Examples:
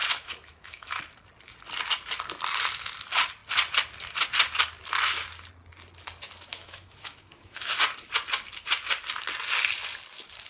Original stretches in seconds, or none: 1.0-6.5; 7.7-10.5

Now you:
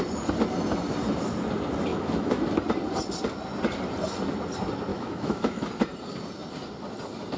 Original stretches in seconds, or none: 0.0-1.9; 2.4-4.9; 5.7-7.4

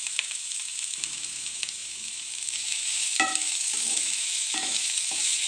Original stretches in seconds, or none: none

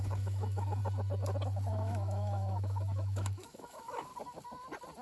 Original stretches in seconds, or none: 0.8-1.7; 4.1-5.0

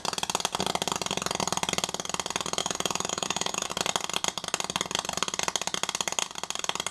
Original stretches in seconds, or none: 0.0-2.6; 3.7-6.9

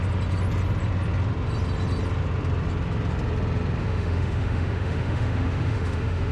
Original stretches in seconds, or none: 0.0-3.8

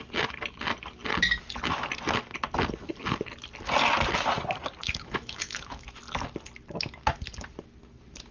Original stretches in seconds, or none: 0.0-4.8; 6.0-8.3